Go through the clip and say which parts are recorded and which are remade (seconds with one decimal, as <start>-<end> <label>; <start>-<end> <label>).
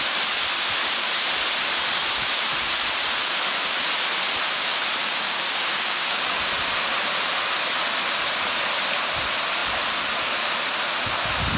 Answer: 0.0-5.0 recorded; 5.0-6.3 remade; 6.3-11.6 recorded